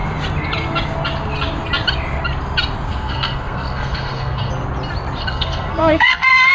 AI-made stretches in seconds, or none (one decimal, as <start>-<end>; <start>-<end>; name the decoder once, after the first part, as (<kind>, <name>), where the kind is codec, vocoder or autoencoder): 2.9-4.5 (codec, SNAC); 5.2-6.5